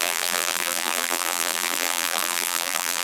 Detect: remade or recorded remade